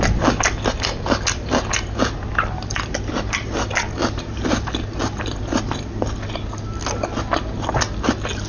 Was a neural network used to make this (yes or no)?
no